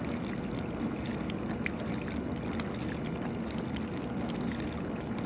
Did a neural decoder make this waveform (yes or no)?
no